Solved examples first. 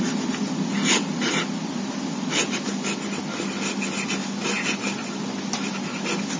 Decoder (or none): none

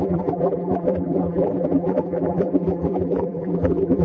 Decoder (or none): vocoder, BigVGAN v2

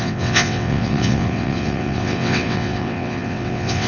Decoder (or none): vocoder, WaveNeXt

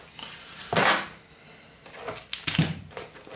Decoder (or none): none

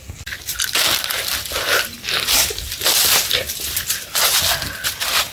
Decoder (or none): none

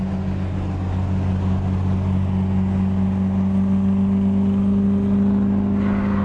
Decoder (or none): none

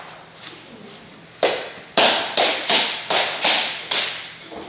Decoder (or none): none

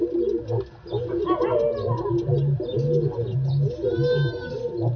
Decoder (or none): none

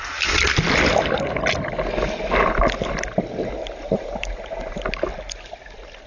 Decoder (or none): none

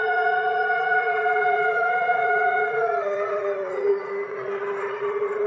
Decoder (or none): vocoder, Vocos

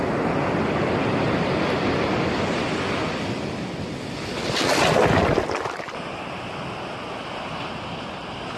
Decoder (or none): none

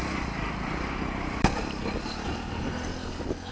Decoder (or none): vocoder, BigVGAN v2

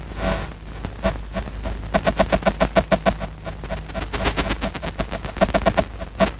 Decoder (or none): none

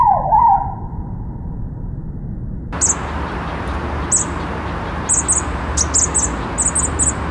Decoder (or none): none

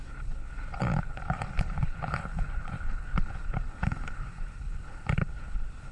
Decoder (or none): codec, HILCodec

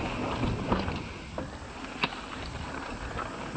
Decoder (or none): none